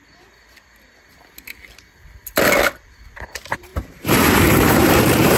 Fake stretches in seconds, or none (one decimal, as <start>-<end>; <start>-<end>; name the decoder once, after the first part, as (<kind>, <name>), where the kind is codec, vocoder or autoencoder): 3.7-4.9 (vocoder, BigVGAN v2)